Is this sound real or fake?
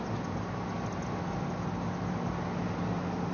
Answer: real